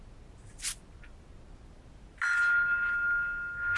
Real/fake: real